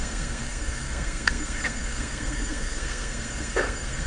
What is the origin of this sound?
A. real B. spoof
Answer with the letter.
B